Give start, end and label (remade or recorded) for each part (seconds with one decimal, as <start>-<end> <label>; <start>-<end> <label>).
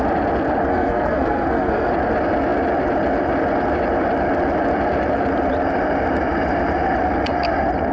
0.0-0.7 recorded; 0.7-1.9 remade; 1.9-7.9 recorded